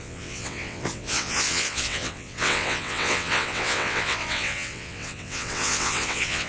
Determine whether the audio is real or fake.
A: fake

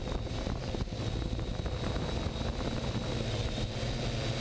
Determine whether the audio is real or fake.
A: real